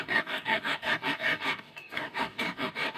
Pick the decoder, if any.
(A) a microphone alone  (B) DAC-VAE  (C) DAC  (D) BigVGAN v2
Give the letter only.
C